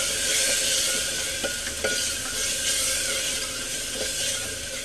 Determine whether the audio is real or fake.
real